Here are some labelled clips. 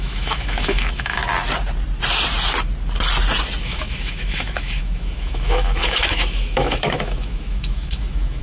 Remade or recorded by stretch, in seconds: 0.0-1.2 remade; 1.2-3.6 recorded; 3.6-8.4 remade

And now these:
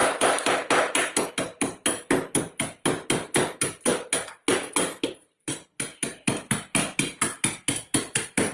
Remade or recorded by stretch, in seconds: 0.0-8.5 recorded

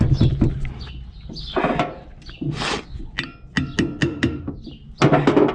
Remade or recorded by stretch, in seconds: 0.0-4.0 recorded; 4.0-4.5 remade; 4.5-5.5 recorded

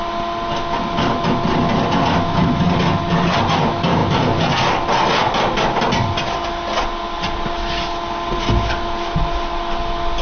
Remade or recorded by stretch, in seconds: 0.0-10.2 recorded

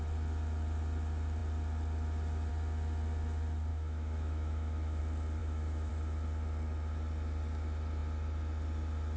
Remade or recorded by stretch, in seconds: 0.0-3.7 recorded; 3.7-5.0 remade; 5.0-5.4 recorded; 5.4-5.9 remade; 5.9-9.2 recorded